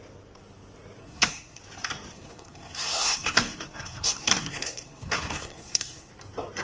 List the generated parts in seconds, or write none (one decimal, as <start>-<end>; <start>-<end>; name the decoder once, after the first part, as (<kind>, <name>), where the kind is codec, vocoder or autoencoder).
1.0-1.6 (codec, SNAC); 2.1-6.1